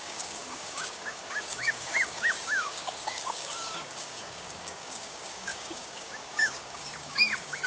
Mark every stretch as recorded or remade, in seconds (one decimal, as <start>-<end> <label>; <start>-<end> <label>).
0.0-7.7 remade